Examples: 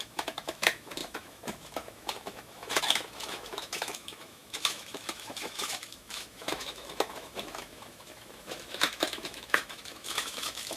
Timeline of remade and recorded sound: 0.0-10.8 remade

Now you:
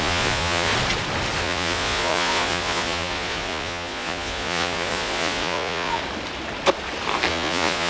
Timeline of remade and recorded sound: 0.0-0.7 remade; 0.7-1.4 recorded; 1.4-6.0 remade; 6.0-7.3 recorded; 7.3-7.9 remade

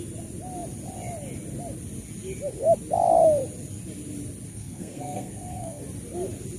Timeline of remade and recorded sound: 0.0-4.5 recorded; 4.5-5.8 remade; 5.8-6.6 recorded

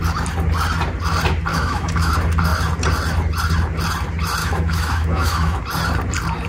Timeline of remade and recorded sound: 0.0-1.5 recorded; 1.5-2.1 remade; 2.1-4.4 recorded; 4.4-5.6 remade; 5.6-6.5 recorded

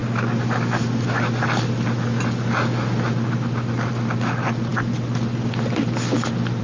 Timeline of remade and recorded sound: 0.0-6.6 recorded

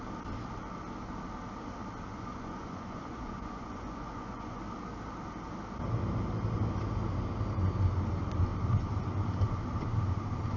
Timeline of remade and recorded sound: 0.0-2.1 recorded; 2.1-4.6 remade; 4.6-10.6 recorded

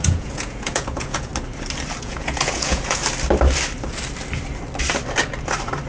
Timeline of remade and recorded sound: 0.0-1.3 remade; 1.3-2.0 recorded; 2.0-3.0 remade; 3.0-5.9 recorded